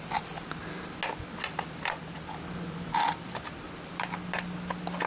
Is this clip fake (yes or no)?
no